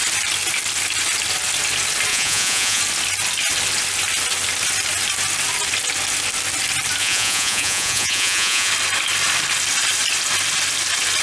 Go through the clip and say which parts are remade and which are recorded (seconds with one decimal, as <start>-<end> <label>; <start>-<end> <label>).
0.0-2.1 recorded; 2.1-2.8 remade; 2.8-7.0 recorded; 7.0-8.7 remade; 8.7-11.2 recorded